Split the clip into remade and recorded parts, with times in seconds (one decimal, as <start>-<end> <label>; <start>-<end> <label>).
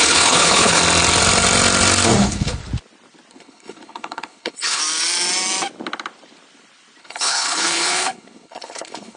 0.0-0.8 remade; 0.8-2.2 recorded; 2.2-2.6 remade; 2.6-3.3 recorded; 3.3-4.8 remade; 4.8-7.0 recorded; 7.0-9.2 remade